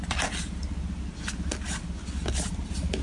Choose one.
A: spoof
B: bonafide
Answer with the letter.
B